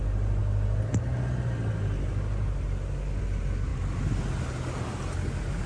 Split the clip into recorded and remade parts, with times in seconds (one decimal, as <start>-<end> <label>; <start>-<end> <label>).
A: 0.0-5.7 recorded